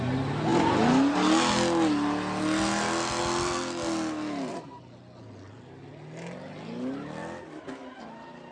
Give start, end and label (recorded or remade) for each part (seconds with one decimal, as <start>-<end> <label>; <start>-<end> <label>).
0.0-8.5 recorded